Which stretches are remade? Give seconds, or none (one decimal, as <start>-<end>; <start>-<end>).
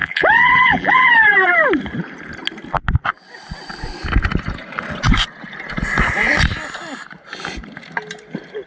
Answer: 0.0-1.1